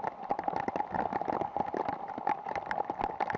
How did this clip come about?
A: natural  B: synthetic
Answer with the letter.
A